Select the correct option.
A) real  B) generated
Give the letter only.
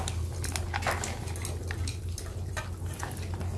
A